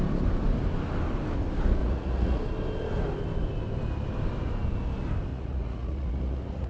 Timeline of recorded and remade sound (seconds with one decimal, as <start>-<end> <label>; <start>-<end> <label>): 0.0-1.8 recorded; 1.8-2.4 remade; 2.4-5.3 recorded; 5.3-6.7 remade